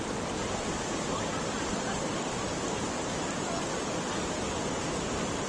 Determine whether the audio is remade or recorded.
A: recorded